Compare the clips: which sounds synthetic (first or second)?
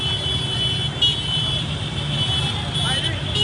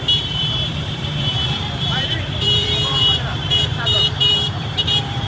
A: second